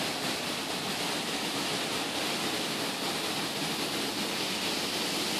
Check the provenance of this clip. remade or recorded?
recorded